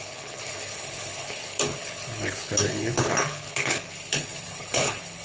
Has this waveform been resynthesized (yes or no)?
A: yes